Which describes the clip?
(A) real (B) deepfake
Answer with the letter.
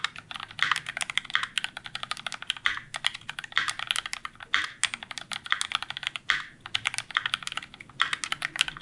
A